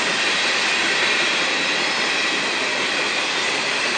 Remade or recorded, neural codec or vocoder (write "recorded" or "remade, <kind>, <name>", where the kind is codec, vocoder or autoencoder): recorded